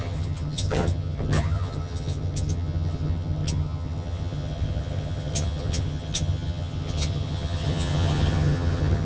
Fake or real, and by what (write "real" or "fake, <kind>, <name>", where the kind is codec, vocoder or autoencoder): fake, vocoder, HiFi-GAN